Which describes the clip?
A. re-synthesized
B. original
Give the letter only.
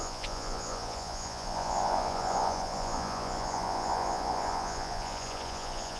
A